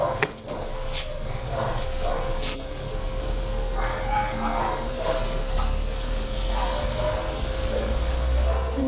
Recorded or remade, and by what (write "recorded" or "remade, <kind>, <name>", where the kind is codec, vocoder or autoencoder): remade, codec, SNAC